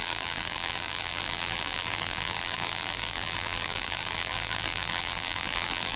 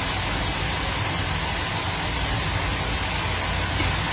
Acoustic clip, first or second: second